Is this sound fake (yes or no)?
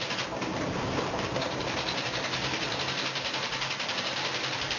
no